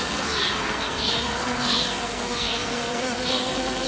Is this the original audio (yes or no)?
no